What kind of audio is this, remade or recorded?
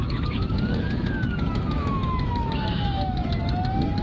remade